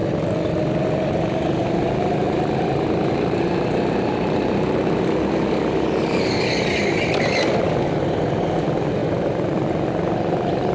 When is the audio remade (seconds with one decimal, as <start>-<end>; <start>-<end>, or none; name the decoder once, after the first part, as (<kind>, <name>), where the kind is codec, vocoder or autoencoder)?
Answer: none